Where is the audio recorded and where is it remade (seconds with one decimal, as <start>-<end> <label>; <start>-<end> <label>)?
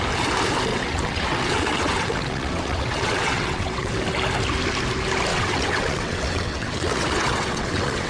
0.0-0.7 recorded; 0.7-3.9 remade; 3.9-5.3 recorded; 5.3-8.1 remade